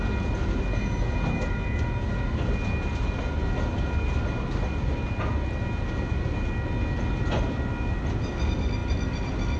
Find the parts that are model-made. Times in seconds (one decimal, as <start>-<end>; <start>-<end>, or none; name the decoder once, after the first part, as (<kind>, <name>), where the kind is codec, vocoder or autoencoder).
none